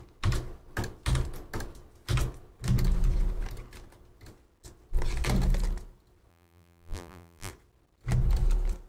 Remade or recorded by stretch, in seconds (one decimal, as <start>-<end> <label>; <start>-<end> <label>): 0.0-6.3 recorded; 6.3-7.5 remade; 7.5-8.9 recorded